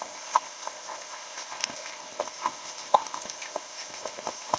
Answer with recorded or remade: remade